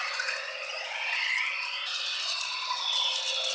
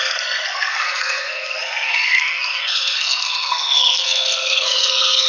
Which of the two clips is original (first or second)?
first